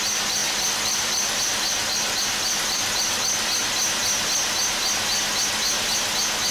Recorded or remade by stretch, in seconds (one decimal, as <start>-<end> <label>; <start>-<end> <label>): 0.0-3.6 remade; 3.6-6.5 recorded